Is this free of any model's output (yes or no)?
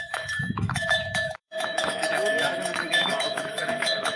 no